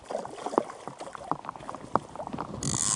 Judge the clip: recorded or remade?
recorded